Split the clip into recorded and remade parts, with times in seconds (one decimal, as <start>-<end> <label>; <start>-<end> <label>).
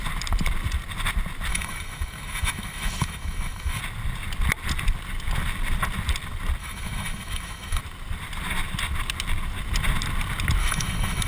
0.0-1.5 recorded; 1.5-3.8 remade; 3.8-6.6 recorded; 6.6-7.8 remade; 7.8-10.6 recorded; 10.6-11.3 remade